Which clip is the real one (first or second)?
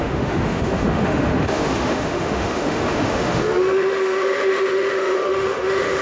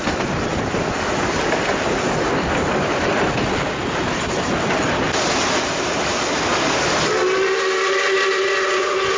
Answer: second